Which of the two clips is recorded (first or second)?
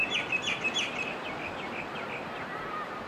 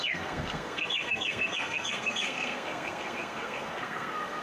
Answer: first